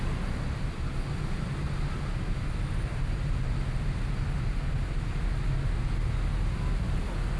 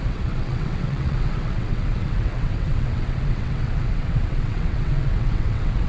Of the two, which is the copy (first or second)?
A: second